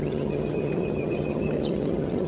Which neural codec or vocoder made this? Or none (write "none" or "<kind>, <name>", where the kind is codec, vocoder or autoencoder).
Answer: vocoder, HiFi-GAN